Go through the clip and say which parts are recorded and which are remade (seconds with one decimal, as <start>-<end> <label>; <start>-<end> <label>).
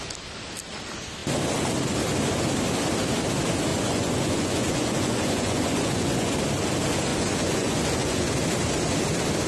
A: 0.0-3.7 recorded; 3.7-6.3 remade; 6.3-7.1 recorded; 7.1-8.3 remade; 8.3-9.5 recorded